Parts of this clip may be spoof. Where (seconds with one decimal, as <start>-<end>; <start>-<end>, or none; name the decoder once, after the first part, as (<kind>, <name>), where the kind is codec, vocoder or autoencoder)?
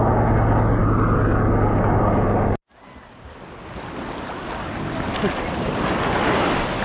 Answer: none